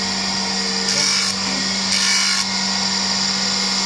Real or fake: real